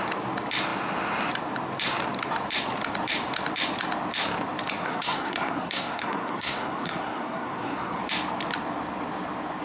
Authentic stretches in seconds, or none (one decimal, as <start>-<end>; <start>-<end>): 0.0-4.8; 8.0-9.6